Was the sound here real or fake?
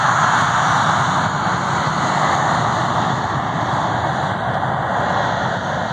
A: real